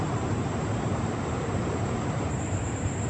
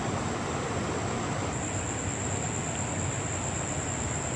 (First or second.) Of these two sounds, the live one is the second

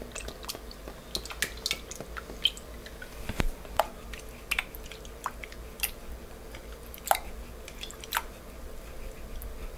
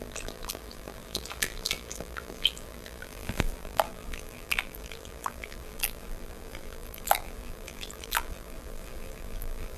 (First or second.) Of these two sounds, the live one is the first